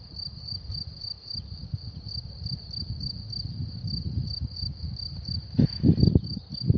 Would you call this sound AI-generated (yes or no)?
no